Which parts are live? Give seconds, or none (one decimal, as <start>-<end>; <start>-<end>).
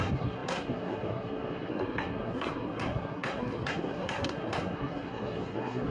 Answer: none